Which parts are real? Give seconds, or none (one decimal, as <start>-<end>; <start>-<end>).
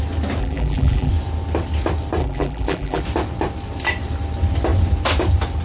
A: 0.0-0.4; 1.1-2.2; 3.0-5.6